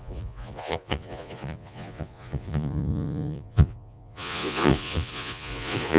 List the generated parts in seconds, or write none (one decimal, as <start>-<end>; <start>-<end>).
0.0-6.0